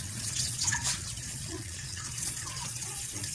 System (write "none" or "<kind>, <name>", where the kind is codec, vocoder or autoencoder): vocoder, Vocos